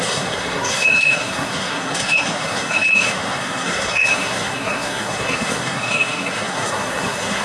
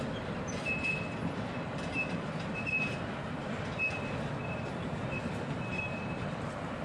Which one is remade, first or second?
first